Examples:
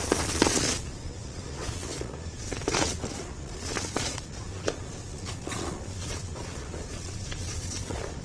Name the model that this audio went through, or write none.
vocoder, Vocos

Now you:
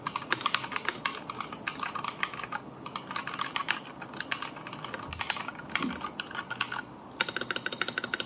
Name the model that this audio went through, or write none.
none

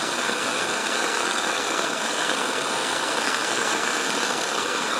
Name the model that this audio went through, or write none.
codec, SNAC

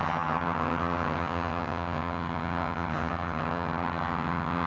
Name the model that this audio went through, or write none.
vocoder, HiFi-GAN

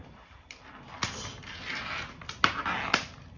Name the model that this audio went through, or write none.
none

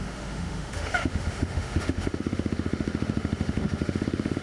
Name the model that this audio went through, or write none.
autoencoder, DAC-VAE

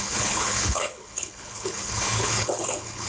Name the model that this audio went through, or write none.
codec, HILCodec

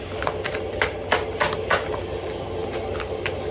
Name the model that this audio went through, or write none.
none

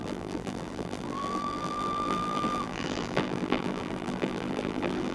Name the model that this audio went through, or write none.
vocoder, BigVGAN v2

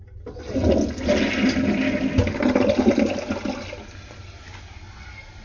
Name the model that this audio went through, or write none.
none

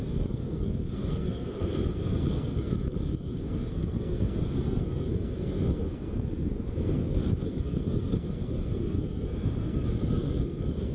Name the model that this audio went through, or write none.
codec, SNAC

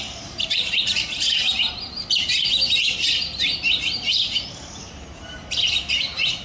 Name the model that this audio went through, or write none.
vocoder, BigVGAN v2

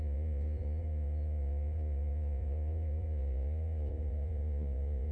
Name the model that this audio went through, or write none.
vocoder, Vocos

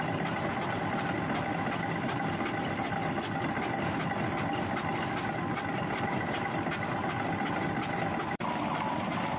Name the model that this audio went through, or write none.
none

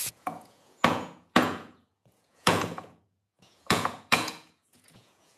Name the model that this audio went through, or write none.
vocoder, Vocos